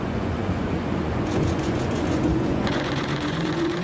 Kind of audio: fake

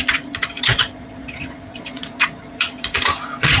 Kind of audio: fake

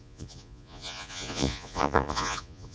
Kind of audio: fake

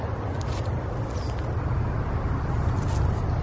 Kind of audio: real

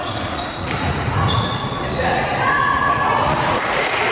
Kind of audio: fake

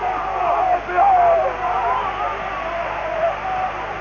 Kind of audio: real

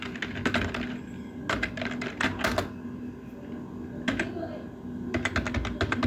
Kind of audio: real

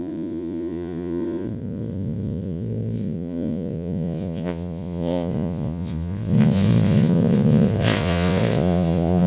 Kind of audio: fake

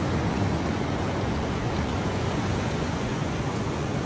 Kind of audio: fake